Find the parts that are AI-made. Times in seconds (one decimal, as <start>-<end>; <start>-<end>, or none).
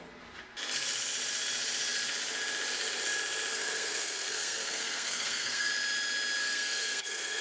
3.5-5.7; 6.4-7.4